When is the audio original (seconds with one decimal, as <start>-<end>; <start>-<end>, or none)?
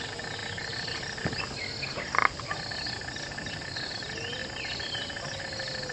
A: 0.0-4.4; 5.4-5.9